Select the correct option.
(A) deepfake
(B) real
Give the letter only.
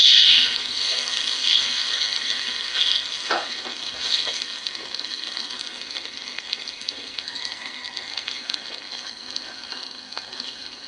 A